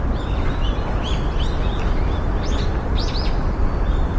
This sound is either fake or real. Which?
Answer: real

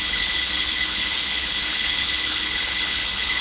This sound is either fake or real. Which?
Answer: fake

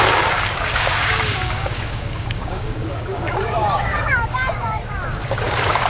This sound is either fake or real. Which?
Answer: fake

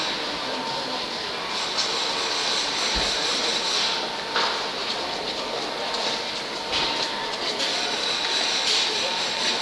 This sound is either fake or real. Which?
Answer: real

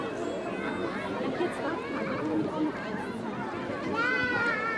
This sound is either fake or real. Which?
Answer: real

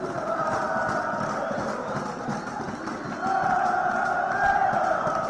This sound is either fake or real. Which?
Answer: real